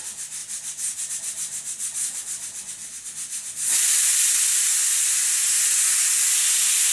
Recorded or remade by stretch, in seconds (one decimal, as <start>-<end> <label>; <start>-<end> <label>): 0.0-6.9 recorded